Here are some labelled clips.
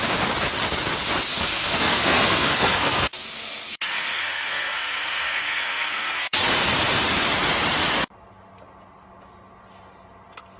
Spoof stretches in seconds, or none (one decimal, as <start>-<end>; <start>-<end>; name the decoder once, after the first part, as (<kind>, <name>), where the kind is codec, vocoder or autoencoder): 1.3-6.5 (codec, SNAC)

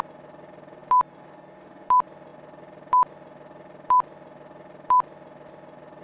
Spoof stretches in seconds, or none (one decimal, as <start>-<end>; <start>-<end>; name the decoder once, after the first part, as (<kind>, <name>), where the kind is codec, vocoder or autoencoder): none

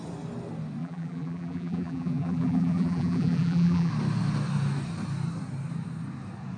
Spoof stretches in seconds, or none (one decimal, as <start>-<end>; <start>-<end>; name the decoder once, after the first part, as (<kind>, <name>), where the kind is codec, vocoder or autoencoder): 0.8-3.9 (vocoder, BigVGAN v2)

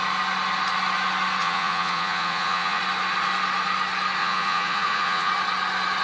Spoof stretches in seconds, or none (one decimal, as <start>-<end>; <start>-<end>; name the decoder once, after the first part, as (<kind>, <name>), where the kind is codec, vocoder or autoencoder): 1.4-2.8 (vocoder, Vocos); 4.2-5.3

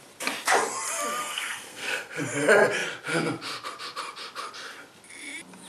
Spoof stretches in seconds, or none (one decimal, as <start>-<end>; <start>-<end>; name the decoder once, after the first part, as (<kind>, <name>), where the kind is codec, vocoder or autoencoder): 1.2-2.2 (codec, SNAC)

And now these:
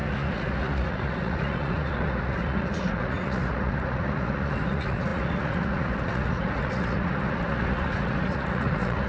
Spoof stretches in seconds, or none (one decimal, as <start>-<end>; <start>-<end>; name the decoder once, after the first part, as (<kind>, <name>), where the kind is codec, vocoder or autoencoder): 0.0-9.1 (vocoder, Vocos)